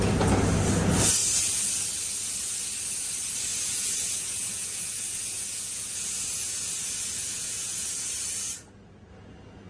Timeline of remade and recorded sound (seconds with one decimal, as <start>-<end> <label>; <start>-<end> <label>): 0.0-1.2 recorded; 1.2-1.7 remade; 1.7-3.5 recorded; 3.5-8.1 remade; 8.1-9.7 recorded